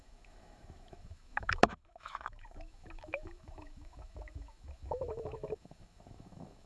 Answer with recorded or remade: remade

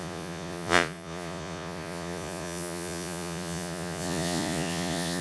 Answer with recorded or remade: remade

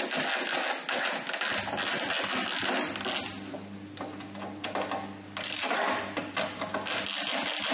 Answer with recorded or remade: recorded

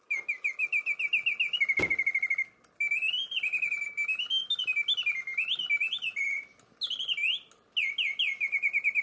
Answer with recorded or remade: recorded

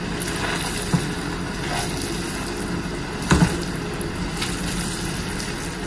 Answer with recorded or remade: recorded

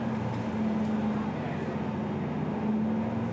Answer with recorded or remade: recorded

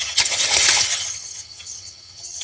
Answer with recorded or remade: remade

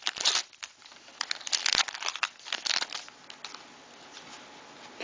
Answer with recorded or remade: recorded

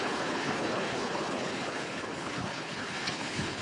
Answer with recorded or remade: remade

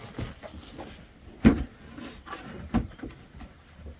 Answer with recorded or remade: recorded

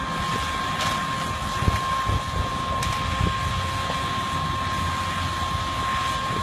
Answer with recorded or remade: recorded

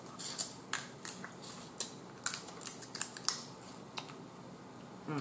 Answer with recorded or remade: recorded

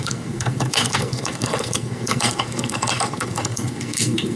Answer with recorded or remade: remade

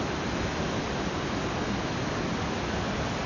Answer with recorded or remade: recorded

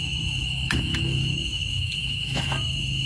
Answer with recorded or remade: remade